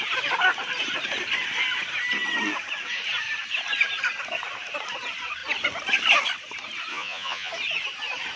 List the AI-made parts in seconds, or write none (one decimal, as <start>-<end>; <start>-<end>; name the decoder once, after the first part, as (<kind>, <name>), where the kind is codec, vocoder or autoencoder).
6.9-7.5 (vocoder, Vocos)